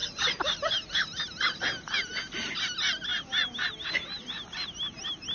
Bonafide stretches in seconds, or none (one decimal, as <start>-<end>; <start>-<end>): 0.0-5.3